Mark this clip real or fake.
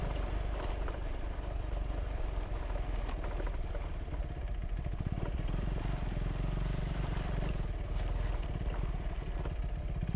fake